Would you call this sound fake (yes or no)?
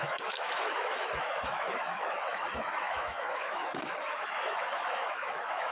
yes